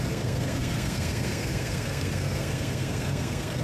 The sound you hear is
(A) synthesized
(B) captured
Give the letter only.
A